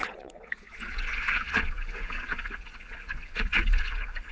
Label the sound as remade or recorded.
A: remade